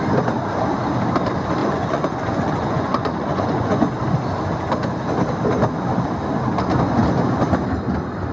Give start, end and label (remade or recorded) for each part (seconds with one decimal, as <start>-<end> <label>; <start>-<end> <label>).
0.0-1.6 recorded; 1.6-3.9 remade; 3.9-8.3 recorded

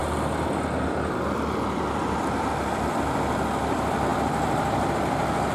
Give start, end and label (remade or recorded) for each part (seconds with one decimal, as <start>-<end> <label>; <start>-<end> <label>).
0.0-5.5 recorded

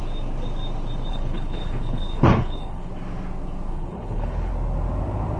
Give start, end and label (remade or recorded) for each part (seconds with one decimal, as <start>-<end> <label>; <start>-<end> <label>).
0.0-1.1 recorded; 1.1-2.9 remade; 2.9-3.7 recorded; 3.7-4.5 remade; 4.5-5.4 recorded

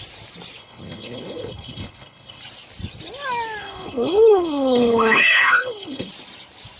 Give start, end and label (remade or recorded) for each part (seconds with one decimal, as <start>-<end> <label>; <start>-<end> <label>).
0.0-0.6 recorded; 0.6-2.4 remade; 2.4-3.6 recorded; 3.6-6.1 remade; 6.1-6.8 recorded

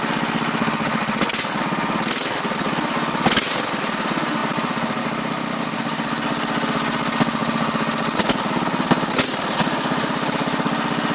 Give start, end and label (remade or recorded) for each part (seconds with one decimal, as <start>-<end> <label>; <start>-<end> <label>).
0.0-4.4 recorded; 4.4-5.0 remade; 5.0-11.1 recorded